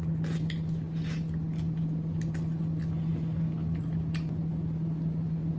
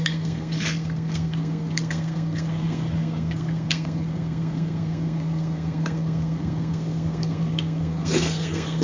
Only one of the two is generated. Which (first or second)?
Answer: second